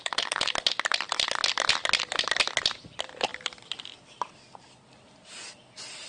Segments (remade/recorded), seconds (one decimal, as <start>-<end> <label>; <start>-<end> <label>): 0.0-6.1 recorded